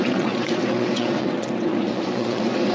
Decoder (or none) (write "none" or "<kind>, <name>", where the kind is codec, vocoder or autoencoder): vocoder, WaveNeXt